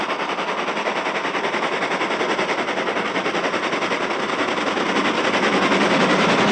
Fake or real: real